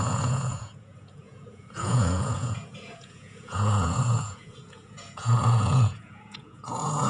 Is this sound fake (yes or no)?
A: yes